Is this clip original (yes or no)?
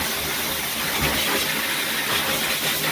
yes